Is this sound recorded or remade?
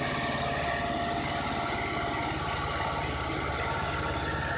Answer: recorded